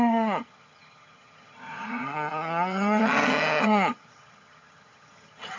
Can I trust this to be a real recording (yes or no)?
no